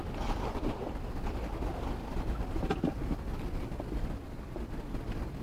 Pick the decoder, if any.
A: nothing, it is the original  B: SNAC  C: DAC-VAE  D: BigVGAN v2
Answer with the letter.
A